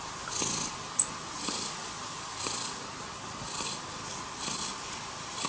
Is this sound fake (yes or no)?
no